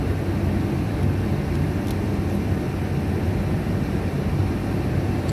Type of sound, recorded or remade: recorded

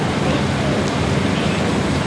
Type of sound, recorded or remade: recorded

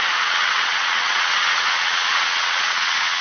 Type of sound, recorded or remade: remade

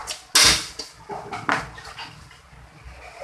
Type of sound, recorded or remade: recorded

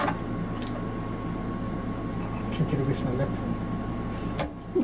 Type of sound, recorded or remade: recorded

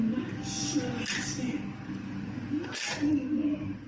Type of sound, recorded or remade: recorded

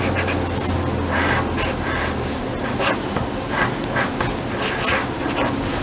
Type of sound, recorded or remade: recorded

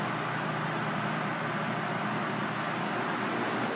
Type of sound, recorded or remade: recorded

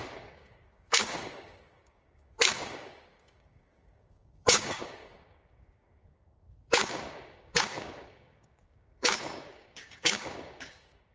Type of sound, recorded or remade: remade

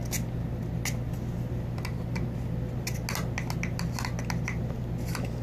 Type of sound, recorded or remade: recorded